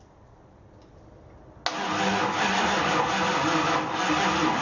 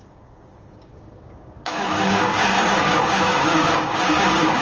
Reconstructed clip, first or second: second